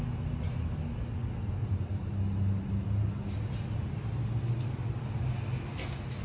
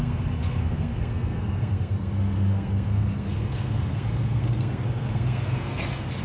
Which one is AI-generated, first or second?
second